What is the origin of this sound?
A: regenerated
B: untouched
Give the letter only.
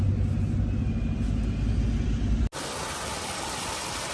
B